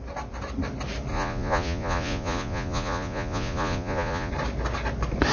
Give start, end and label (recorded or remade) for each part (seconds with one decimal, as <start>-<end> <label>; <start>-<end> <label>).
0.0-1.1 recorded; 1.1-4.3 remade; 4.3-5.3 recorded